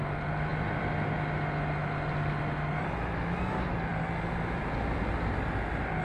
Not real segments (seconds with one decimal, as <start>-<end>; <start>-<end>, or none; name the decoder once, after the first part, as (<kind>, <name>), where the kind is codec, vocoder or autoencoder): none